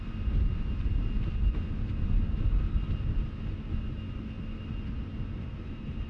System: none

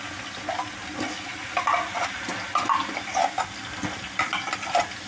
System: none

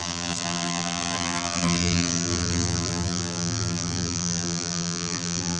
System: vocoder, BigVGAN v2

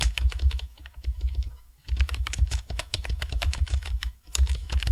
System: autoencoder, DAC-VAE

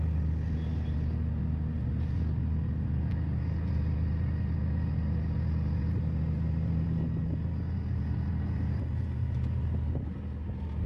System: none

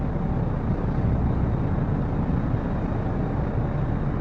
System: none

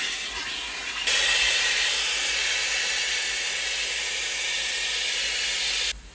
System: none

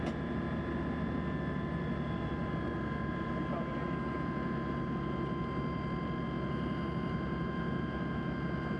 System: none